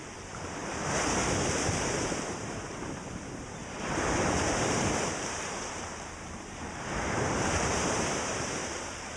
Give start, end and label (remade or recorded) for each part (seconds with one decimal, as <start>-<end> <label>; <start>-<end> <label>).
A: 0.0-9.2 remade